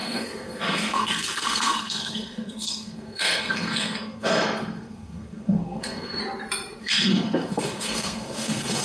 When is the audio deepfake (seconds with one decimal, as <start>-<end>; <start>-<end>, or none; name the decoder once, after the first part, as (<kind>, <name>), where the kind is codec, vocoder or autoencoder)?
0.0-6.2 (codec, SNAC); 6.8-8.8